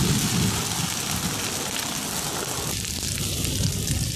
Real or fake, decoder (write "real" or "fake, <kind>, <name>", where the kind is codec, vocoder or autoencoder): real